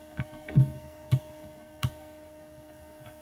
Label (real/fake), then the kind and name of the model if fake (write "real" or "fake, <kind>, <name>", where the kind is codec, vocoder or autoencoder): fake, codec, SNAC